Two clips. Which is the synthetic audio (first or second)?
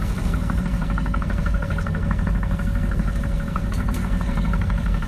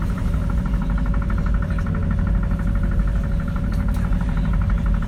first